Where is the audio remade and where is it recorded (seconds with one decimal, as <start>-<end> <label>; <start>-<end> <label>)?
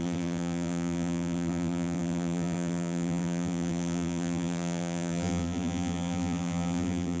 0.0-7.2 remade